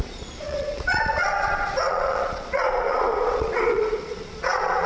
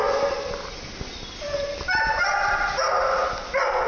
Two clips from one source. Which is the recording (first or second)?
second